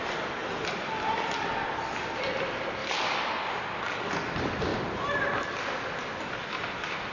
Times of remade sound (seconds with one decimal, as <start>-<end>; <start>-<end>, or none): none